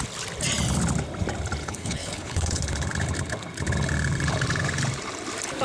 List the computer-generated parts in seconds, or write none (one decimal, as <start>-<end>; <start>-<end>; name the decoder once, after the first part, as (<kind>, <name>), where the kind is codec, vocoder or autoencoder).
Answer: 1.6-2.6 (codec, HILCodec)